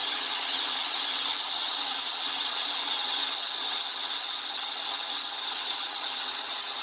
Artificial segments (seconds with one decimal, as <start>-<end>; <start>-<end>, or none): 0.0-6.8